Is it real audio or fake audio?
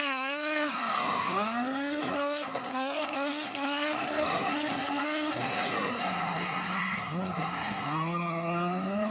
fake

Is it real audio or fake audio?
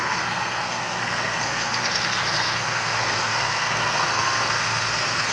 fake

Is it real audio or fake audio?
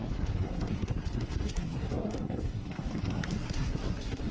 fake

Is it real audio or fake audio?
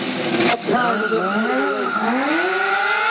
real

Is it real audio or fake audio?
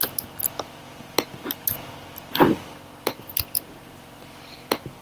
real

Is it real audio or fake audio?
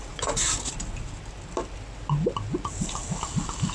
real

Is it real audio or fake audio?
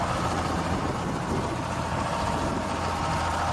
real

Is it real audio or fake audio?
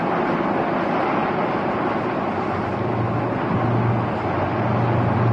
real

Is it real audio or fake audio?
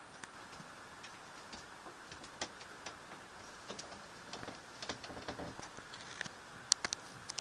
real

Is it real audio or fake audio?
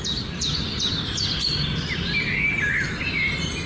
real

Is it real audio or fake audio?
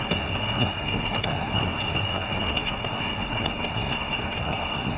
fake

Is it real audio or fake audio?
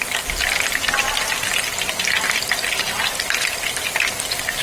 real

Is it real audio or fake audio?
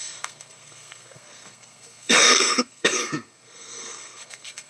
fake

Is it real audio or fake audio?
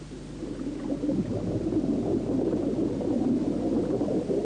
real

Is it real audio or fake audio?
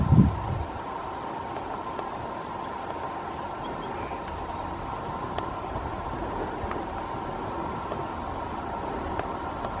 real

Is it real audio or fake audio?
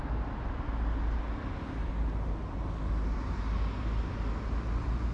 real